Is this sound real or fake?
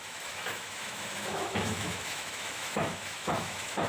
fake